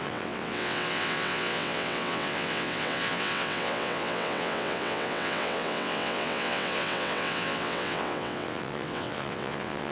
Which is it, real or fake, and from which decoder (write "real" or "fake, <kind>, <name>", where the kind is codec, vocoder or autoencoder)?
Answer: fake, vocoder, WaveNeXt